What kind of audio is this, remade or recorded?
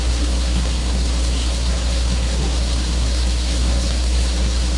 remade